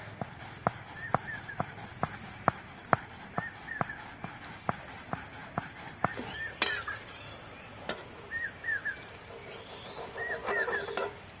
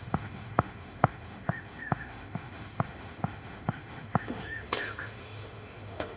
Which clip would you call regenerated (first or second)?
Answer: second